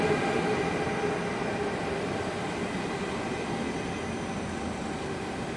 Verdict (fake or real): real